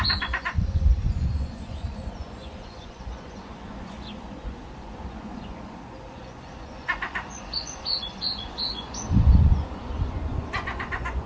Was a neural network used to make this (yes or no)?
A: yes